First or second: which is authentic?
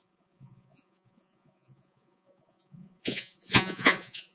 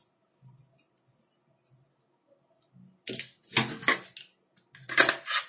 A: second